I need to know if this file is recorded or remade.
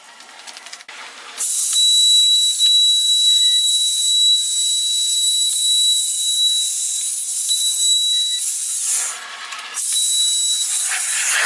recorded